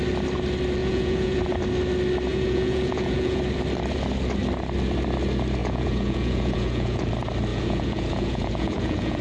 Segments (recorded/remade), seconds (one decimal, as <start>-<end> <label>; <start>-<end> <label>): 0.0-0.8 recorded; 0.8-1.4 remade; 1.4-2.3 recorded; 2.3-3.4 remade; 3.4-5.6 recorded; 5.6-7.1 remade; 7.1-7.5 recorded; 7.5-9.2 remade